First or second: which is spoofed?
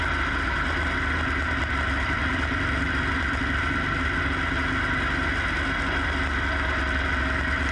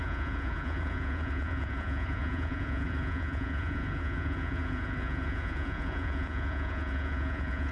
second